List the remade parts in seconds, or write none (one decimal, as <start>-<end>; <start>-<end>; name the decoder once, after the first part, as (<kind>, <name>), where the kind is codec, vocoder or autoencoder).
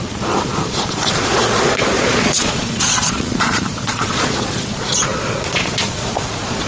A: 0.0-6.7 (vocoder, Vocos)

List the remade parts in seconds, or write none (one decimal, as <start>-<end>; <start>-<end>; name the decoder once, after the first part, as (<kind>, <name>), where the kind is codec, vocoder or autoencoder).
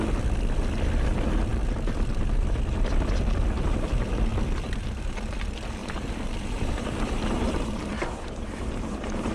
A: 5.8-9.3 (vocoder, BigVGAN v2)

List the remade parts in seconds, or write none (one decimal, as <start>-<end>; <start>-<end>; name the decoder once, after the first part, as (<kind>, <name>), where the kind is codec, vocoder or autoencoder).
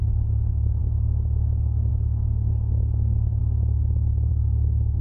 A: 0.0-3.4 (codec, DAC); 4.3-5.0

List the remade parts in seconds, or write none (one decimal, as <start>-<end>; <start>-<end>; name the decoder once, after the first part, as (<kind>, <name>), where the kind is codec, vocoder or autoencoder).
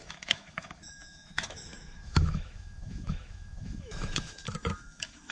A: 0.0-5.3 (autoencoder, DAC-VAE)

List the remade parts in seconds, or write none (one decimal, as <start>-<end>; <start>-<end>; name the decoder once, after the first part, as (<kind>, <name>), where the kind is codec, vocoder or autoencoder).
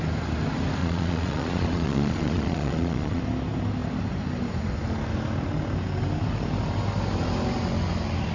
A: 0.8-3.2 (vocoder, Vocos)